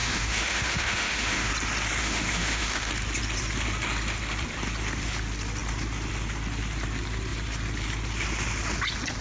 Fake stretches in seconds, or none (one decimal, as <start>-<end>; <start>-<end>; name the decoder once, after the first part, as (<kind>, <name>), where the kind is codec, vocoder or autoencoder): 0.0-1.5 (autoencoder, DAC-VAE); 2.0-2.9